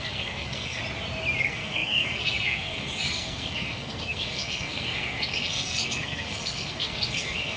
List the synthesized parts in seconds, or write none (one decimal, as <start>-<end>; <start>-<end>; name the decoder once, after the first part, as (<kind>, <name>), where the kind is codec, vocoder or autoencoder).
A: 0.0-0.8 (codec, SNAC); 1.4-7.6